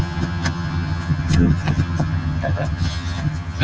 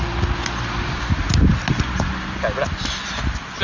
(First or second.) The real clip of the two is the second